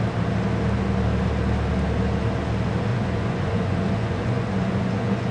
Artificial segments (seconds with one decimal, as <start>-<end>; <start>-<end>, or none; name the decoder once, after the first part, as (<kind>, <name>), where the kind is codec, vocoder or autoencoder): 2.9-5.3 (vocoder, Vocos)